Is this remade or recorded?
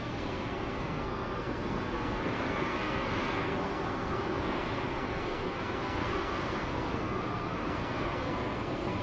remade